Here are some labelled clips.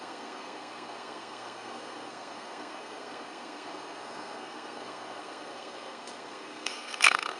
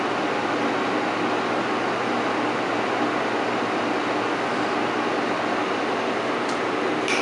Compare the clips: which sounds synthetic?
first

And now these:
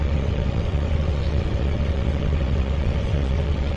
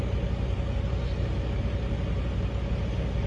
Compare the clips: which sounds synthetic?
first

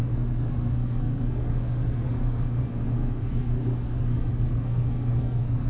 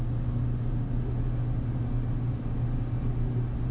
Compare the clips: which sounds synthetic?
first